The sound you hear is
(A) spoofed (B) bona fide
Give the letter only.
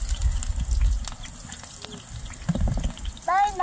B